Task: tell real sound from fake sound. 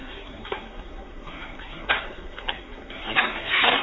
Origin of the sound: fake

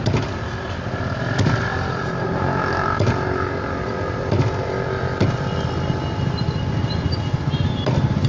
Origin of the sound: real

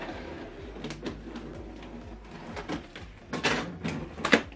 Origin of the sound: real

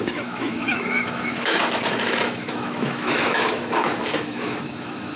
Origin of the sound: fake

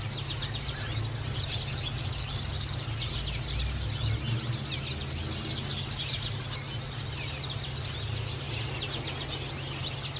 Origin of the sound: real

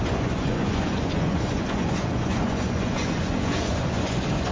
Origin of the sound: fake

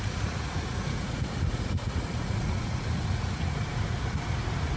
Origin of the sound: fake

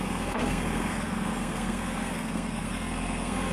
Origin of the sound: fake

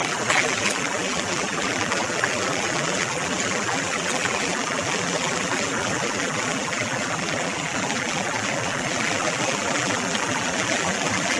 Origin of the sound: fake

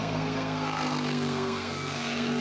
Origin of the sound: fake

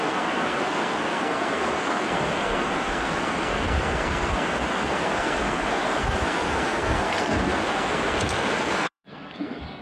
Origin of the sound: fake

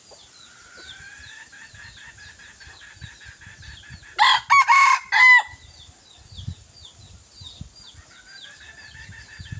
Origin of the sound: real